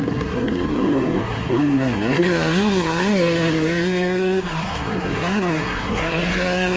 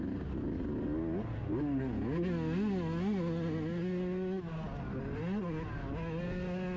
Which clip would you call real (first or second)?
second